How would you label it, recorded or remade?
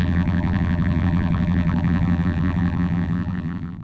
remade